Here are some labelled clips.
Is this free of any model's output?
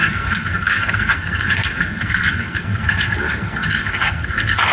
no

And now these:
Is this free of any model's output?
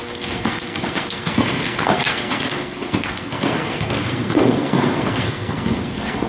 no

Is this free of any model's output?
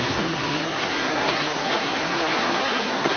no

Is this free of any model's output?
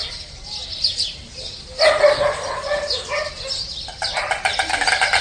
yes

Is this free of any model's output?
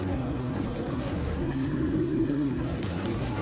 no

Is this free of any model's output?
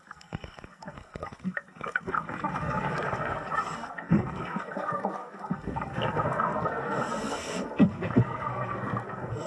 no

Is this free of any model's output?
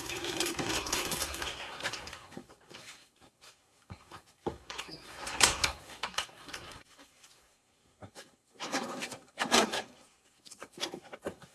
no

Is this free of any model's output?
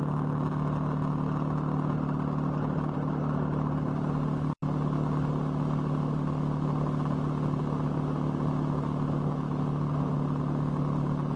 yes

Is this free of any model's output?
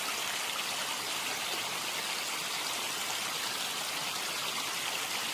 yes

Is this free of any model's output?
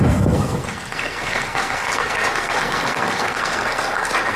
no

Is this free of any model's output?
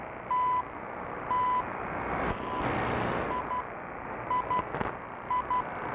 yes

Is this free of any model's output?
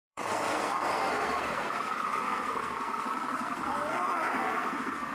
no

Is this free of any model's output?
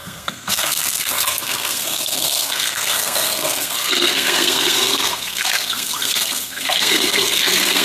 no